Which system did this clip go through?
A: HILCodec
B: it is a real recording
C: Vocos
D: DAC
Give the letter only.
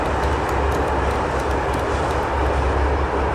B